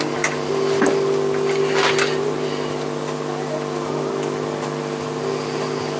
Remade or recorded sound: recorded